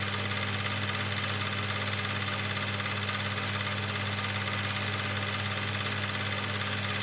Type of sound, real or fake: real